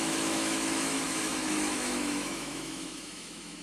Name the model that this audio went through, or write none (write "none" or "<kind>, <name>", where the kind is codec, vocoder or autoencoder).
autoencoder, DAC-VAE